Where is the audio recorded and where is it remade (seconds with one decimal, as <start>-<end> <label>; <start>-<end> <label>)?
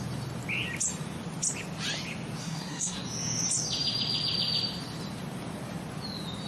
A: 0.0-2.4 recorded; 2.4-3.0 remade; 3.0-6.5 recorded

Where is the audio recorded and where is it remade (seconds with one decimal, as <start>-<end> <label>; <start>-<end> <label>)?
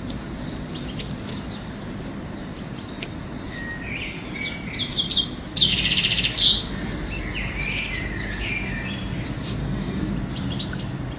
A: 0.0-9.6 recorded; 9.6-10.1 remade; 10.1-11.2 recorded